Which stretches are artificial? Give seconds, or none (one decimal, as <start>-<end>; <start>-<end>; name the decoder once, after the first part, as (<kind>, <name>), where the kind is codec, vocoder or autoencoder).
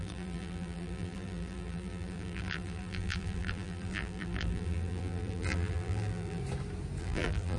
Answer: 0.0-6.4 (vocoder, BigVGAN v2); 7.0-7.6